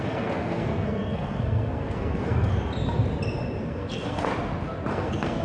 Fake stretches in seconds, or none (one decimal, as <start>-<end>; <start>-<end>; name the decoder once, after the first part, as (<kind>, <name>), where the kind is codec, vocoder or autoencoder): 0.0-2.5 (codec, SNAC); 3.6-4.3; 4.9-5.4